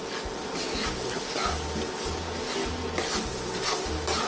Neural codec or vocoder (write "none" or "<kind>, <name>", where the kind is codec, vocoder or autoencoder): none